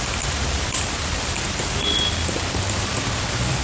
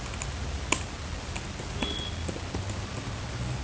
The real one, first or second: second